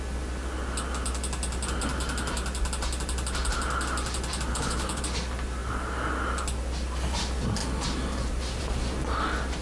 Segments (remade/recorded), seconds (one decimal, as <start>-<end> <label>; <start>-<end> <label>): 0.0-4.5 recorded; 4.5-5.0 remade; 5.0-9.6 recorded